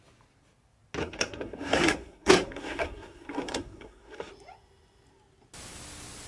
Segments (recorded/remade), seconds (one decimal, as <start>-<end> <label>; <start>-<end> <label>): 0.0-1.0 recorded; 1.0-4.3 remade; 4.3-6.3 recorded